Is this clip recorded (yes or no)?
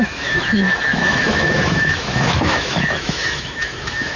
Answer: no